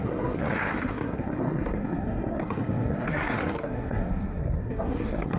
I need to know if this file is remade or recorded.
remade